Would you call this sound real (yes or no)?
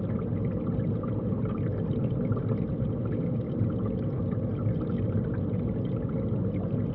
yes